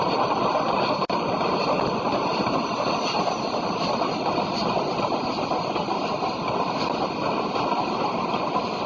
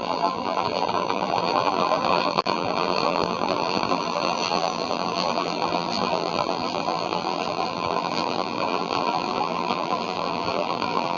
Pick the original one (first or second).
first